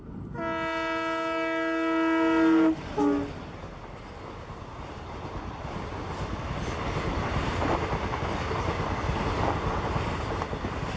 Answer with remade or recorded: recorded